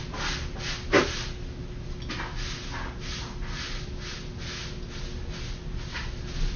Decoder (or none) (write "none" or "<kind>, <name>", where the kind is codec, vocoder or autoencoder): none